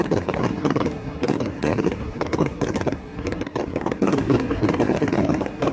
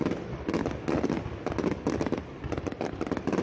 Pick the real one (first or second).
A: second